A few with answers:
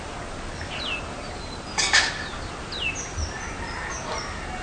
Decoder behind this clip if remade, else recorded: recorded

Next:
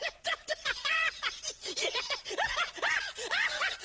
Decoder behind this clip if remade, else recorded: remade, vocoder, WaveNeXt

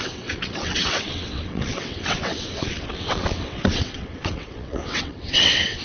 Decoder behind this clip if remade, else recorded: remade, vocoder, WaveNeXt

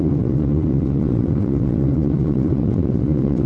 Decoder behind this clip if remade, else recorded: remade, vocoder, WaveNeXt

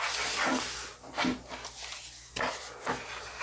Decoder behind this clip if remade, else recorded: recorded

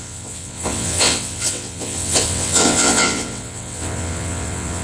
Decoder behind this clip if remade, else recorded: remade, vocoder, WaveNeXt